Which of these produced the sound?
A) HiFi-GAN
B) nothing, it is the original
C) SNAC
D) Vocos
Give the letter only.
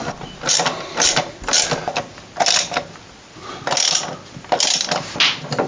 B